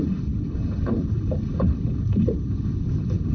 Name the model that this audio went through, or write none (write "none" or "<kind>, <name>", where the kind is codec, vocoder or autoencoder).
codec, HILCodec